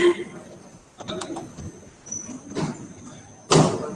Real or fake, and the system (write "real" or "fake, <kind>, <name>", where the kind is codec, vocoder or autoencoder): real